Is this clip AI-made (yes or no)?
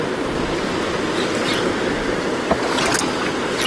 no